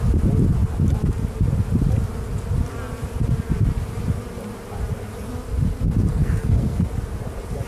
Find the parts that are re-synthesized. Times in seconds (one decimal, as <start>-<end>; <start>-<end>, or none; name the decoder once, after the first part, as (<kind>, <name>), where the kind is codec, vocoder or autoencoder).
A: 6.1-6.9 (codec, SNAC)